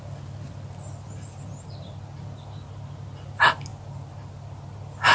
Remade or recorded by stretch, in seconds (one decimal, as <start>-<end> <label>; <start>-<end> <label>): 0.0-5.1 recorded